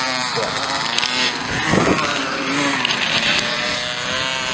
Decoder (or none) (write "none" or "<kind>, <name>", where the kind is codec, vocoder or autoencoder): none